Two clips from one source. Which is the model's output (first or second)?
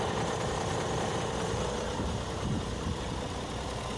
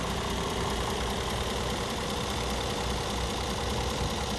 second